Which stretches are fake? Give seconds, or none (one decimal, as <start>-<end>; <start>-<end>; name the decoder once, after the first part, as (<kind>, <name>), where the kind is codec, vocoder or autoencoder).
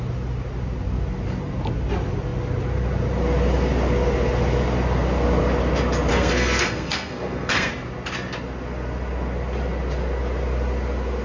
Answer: 6.1-7.7 (codec, SNAC)